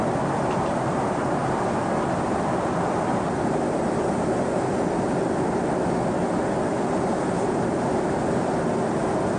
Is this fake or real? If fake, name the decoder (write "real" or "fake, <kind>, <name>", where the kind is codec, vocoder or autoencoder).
real